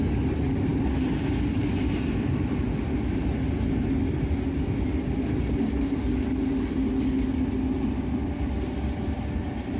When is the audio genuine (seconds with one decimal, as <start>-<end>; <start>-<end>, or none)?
0.0-9.8